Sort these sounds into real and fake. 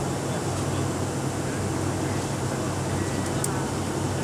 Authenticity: real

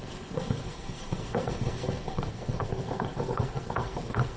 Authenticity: fake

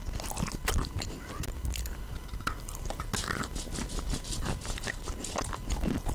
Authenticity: real